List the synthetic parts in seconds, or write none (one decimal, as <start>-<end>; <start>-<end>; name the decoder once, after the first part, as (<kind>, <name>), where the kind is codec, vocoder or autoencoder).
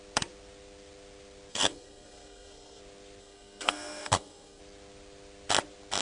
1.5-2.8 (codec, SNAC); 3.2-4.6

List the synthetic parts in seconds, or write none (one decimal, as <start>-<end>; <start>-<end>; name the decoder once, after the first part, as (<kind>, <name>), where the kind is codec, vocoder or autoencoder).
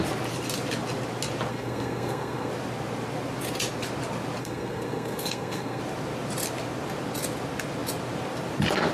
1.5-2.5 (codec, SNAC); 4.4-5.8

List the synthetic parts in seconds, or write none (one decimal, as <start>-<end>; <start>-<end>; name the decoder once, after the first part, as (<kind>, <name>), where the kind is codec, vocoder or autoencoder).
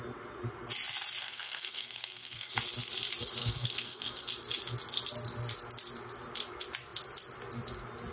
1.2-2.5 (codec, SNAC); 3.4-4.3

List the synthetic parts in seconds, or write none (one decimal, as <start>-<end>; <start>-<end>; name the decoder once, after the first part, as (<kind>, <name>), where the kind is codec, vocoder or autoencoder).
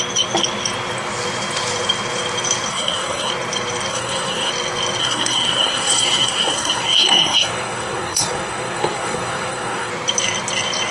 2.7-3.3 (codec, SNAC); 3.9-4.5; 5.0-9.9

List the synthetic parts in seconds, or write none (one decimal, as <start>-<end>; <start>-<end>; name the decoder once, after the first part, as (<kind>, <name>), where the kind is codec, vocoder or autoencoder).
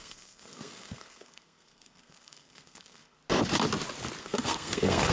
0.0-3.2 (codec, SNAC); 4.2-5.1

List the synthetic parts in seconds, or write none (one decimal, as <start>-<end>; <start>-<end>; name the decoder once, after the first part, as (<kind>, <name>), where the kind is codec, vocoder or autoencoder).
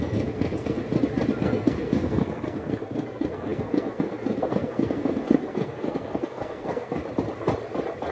0.0-0.8 (codec, SNAC); 1.4-7.0